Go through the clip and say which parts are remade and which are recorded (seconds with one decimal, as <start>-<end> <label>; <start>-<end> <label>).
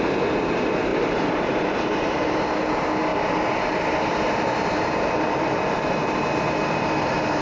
0.0-0.9 recorded; 0.9-2.4 remade; 2.4-3.1 recorded; 3.1-7.4 remade